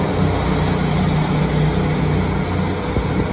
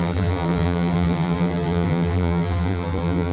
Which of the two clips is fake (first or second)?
second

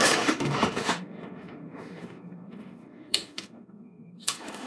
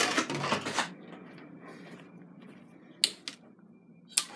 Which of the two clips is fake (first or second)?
first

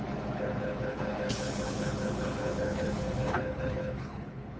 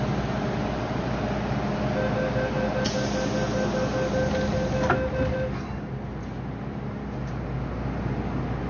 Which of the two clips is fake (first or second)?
first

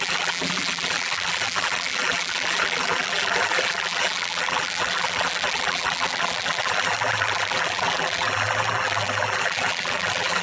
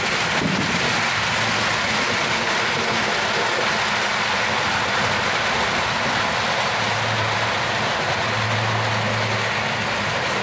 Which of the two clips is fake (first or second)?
first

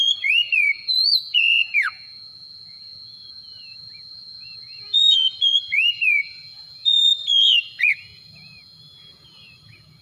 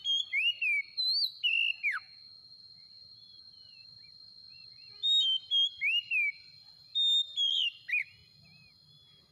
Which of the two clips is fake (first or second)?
first